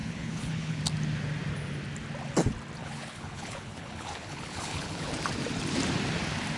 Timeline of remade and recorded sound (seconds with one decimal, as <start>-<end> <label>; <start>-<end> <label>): 0.0-0.8 remade; 0.8-2.8 recorded; 2.8-5.1 remade; 5.1-6.6 recorded